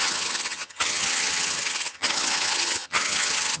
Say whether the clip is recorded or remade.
remade